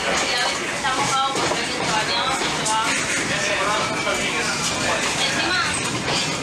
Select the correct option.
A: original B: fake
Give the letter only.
A